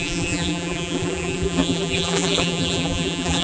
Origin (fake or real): fake